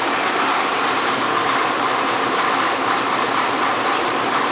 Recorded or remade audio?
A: remade